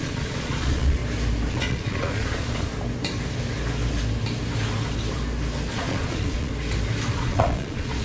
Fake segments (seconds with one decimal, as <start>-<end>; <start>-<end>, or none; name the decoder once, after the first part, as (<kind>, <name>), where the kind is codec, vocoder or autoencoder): 0.0-1.0 (vocoder, Vocos); 1.5-2.7; 5.7-6.5; 7.1-8.0